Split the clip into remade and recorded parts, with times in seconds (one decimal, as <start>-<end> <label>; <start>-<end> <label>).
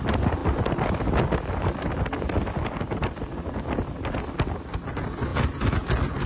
0.0-6.3 recorded